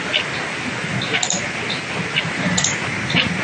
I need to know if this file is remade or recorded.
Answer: recorded